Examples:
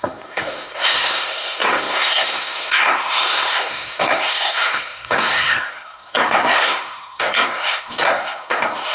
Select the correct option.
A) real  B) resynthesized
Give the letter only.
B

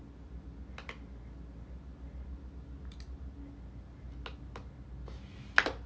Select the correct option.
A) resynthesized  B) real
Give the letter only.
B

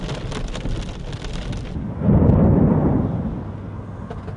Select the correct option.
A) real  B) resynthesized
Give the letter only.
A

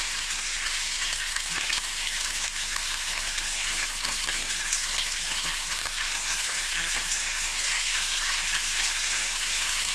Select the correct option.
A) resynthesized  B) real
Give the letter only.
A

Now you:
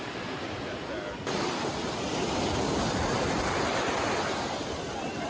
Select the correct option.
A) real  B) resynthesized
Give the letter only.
A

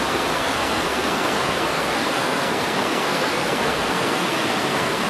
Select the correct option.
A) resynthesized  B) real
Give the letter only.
A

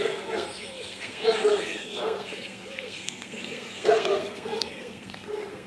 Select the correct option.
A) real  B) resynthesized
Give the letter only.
B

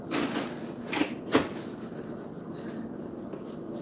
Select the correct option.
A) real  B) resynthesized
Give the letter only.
A